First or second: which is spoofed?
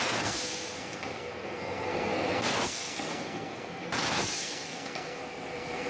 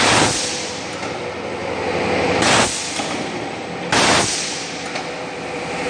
first